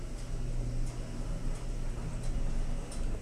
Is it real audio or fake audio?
real